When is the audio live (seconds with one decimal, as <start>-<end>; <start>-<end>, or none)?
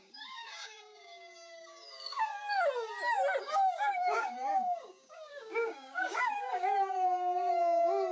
2.3-3.4